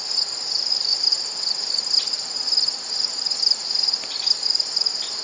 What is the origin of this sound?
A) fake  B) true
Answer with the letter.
B